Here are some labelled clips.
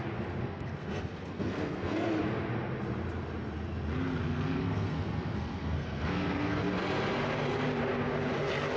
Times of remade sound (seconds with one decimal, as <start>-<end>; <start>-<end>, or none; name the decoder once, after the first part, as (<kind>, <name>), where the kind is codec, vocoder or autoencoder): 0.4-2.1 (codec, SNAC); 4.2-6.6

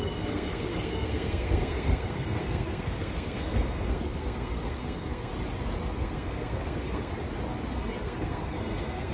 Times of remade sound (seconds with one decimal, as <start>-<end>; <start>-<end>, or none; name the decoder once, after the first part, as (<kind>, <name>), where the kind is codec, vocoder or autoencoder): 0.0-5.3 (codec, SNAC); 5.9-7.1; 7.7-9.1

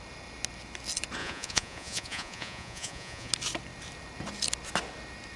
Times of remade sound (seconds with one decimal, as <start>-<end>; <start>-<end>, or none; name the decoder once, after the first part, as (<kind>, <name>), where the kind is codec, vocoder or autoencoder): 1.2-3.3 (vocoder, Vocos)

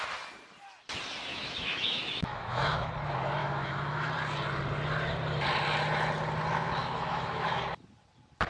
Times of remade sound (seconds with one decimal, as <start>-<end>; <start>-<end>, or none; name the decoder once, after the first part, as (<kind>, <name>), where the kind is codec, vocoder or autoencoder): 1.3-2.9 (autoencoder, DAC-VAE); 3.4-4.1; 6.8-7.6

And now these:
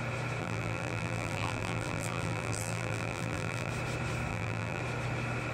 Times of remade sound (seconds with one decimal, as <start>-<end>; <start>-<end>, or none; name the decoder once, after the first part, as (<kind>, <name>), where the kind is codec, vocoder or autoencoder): 0.4-3.7 (vocoder, BigVGAN v2); 4.3-4.8

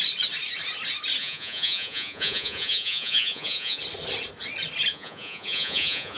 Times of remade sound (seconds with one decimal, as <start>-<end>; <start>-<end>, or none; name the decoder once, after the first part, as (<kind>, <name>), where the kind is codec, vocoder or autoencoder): 1.2-3.8 (vocoder, Vocos); 4.9-6.2

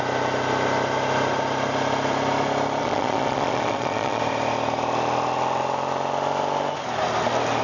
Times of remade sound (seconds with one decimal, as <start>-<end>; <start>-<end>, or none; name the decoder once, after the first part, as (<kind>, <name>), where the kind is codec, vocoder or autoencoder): 2.8-4.2 (vocoder, Vocos)

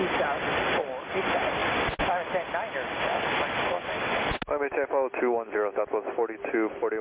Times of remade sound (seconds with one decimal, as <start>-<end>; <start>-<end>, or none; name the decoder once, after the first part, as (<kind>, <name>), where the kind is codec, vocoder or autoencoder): none